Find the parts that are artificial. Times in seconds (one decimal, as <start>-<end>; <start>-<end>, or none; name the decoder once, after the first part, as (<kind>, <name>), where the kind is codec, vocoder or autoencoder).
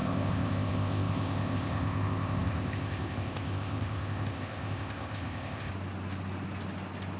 0.0-5.7 (codec, ZipCodec)